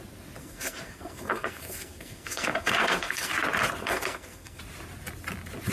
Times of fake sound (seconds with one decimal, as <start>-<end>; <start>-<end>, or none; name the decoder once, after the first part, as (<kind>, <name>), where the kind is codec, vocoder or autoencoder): 0.4-3.3 (codec, SNAC); 3.8-4.6